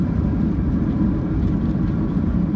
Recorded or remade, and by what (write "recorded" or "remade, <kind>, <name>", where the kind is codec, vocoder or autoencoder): recorded